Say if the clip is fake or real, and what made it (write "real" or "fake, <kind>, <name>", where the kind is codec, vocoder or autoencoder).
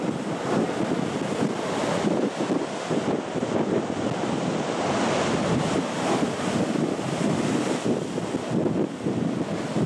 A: real